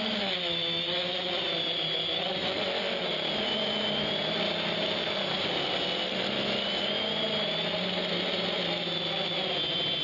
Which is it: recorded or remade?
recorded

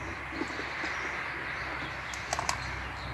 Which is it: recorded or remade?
recorded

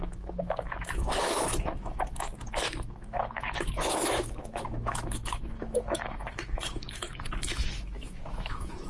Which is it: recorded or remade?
remade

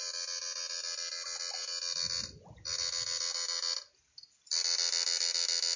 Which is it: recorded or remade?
recorded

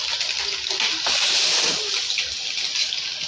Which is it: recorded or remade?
recorded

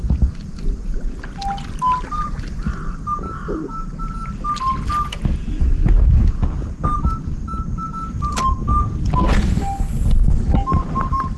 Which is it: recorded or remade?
recorded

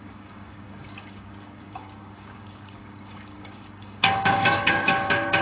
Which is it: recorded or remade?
remade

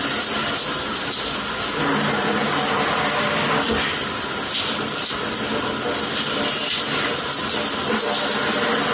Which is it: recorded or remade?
recorded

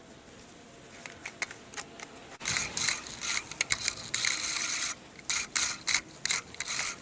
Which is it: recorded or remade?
recorded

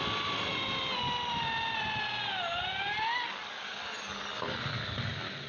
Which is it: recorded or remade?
recorded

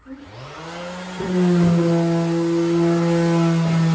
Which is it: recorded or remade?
recorded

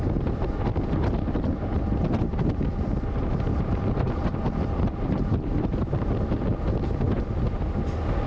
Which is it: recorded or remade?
recorded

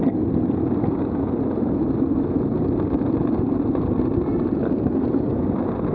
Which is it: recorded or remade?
recorded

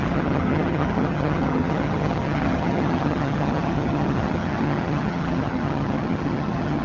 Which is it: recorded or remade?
remade